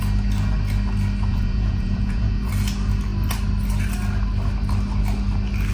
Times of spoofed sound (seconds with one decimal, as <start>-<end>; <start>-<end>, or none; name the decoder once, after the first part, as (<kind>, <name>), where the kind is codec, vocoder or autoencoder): 1.3-2.5 (vocoder, Vocos)